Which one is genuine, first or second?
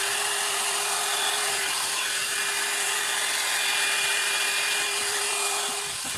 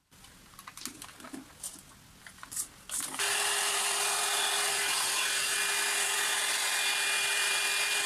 second